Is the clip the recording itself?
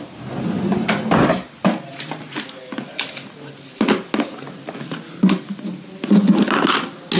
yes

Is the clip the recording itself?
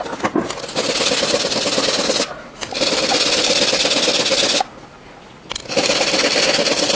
yes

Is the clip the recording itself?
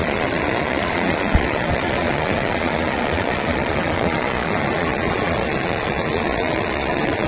no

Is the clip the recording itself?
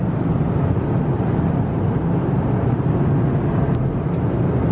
yes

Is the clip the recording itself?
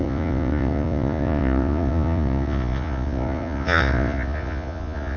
no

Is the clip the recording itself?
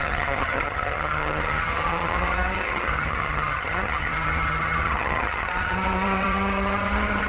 no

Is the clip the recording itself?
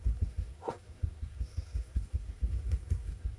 no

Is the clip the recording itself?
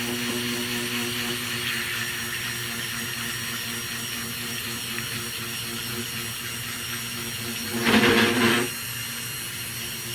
yes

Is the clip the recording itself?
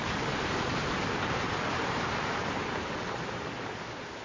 no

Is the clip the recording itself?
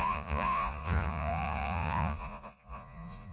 no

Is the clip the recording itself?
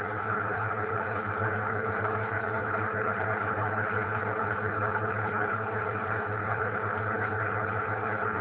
no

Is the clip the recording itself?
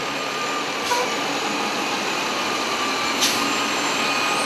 yes